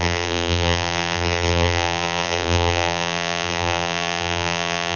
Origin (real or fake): fake